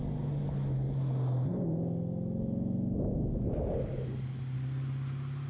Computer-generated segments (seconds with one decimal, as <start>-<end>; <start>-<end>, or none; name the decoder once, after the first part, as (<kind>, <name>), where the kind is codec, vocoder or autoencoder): none